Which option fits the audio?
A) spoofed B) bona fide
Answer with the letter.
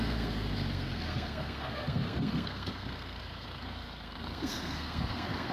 A